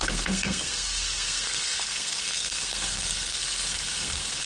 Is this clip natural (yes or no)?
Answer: no